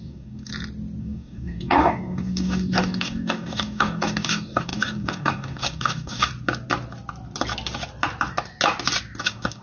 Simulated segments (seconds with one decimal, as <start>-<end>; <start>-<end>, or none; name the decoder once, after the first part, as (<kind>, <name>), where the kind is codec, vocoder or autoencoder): 0.0-0.5 (codec, DAC); 1.0-6.3; 9.2-9.6